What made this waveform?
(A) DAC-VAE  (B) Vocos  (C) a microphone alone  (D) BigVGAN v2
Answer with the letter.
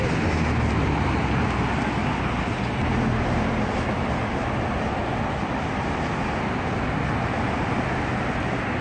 C